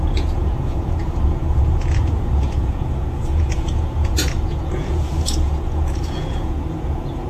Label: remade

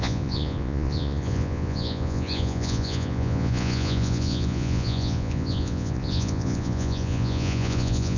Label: remade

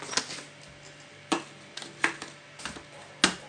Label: recorded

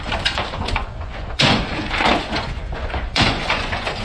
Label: remade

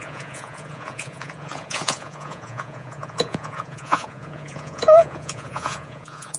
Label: remade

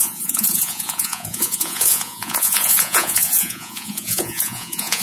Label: remade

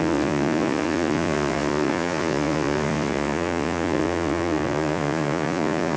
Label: remade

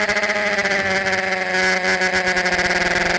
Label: recorded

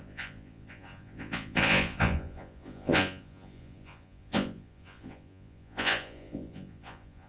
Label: remade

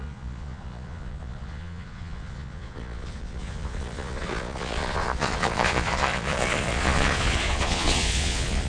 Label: remade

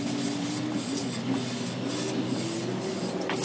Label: recorded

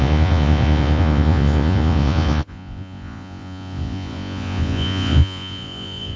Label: remade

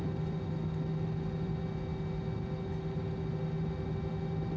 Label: recorded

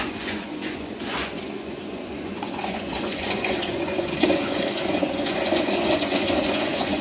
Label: remade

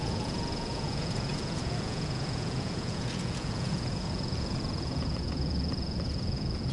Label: remade